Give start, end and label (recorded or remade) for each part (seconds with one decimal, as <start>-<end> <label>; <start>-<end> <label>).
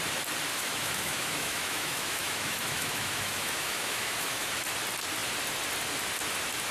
0.0-0.5 recorded; 0.5-4.5 remade; 4.5-6.7 recorded